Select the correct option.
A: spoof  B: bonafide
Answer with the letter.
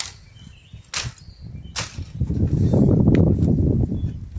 B